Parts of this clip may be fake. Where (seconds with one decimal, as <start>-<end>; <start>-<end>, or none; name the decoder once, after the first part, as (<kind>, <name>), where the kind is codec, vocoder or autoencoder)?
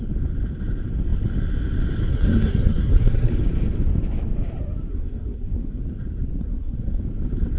2.1-3.3 (codec, SNAC); 4.9-5.8; 6.4-7.0